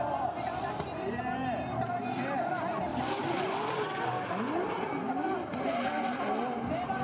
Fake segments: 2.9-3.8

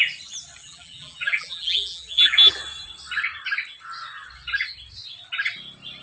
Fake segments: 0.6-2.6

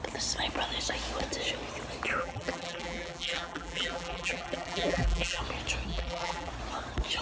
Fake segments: 2.2-5.4; 5.9-6.5